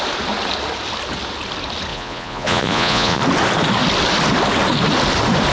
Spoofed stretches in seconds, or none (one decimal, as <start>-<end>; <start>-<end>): 1.9-3.2